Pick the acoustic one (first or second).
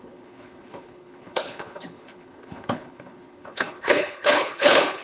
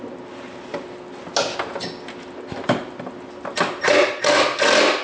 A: second